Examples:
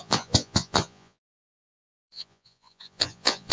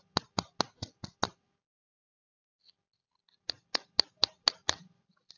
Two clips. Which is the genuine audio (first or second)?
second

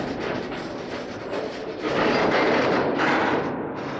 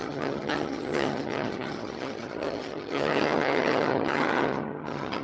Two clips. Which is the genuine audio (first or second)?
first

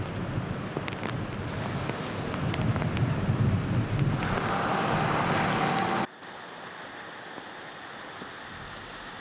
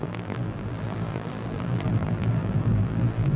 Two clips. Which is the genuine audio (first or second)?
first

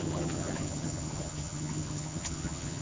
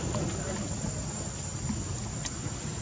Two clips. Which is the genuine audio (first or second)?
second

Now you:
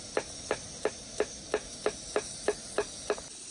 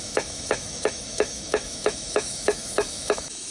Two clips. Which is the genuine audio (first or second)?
first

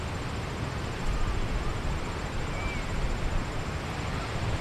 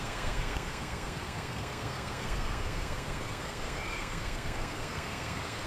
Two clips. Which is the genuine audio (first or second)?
first